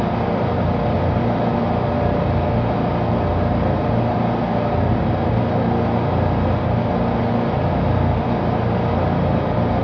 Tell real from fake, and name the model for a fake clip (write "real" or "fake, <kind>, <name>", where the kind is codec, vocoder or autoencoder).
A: real